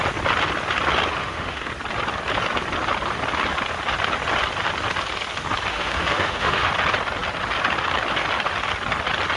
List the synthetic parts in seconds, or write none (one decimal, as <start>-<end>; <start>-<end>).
1.2-1.7; 5.7-6.7